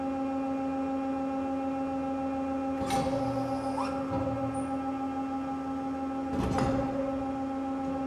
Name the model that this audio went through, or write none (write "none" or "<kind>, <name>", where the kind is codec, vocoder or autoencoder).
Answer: none